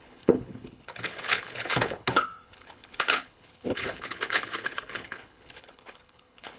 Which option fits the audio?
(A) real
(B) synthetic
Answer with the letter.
B